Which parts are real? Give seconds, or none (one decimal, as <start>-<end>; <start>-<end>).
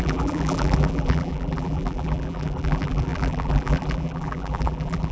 none